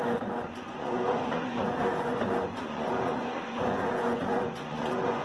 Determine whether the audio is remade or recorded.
remade